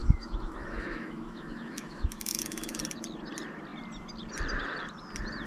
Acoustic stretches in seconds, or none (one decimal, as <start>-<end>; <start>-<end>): 2.8-5.5